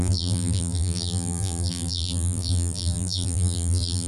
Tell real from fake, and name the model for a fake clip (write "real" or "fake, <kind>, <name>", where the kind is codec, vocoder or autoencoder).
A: fake, vocoder, BigVGAN v2